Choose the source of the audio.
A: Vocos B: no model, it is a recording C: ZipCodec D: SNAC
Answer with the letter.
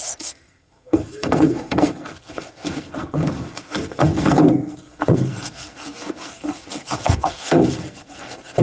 D